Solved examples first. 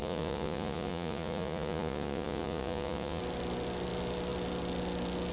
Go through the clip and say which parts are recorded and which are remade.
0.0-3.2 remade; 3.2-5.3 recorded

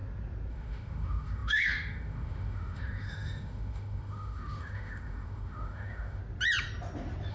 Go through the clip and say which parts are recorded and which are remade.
0.0-0.5 recorded; 0.5-6.2 remade; 6.2-7.3 recorded

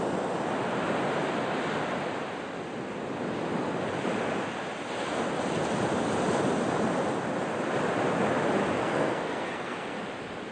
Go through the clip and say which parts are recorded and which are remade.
0.0-8.8 recorded; 8.8-10.0 remade; 10.0-10.5 recorded

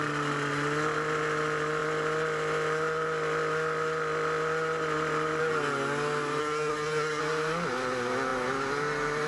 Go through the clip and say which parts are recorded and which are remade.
0.0-6.4 recorded; 6.4-7.2 remade; 7.2-9.3 recorded

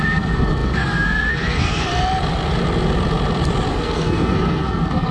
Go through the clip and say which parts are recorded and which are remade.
0.0-1.9 remade; 1.9-3.7 recorded; 3.7-5.1 remade

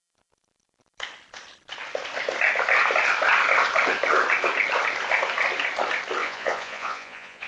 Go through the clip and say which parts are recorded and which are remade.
0.0-6.2 recorded; 6.2-7.5 remade

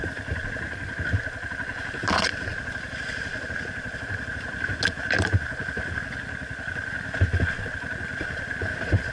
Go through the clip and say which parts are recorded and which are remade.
0.0-9.1 recorded